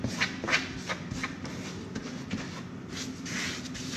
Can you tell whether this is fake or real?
real